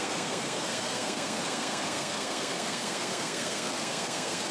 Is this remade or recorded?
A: remade